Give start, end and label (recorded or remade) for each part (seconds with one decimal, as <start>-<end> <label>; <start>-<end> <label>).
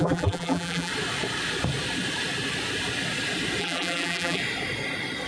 0.0-0.9 remade; 0.9-3.6 recorded; 3.6-4.4 remade; 4.4-5.3 recorded